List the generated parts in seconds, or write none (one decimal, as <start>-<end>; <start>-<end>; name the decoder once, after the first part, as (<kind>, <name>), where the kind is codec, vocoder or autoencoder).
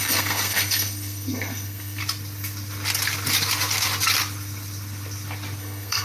0.0-2.0 (codec, SNAC); 5.6-6.0